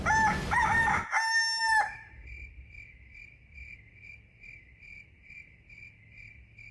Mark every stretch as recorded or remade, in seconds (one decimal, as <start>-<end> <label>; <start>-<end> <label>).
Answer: 0.0-6.7 recorded